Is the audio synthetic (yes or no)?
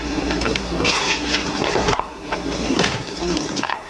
yes